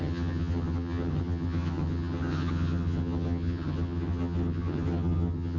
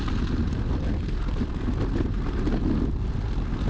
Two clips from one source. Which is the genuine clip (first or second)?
second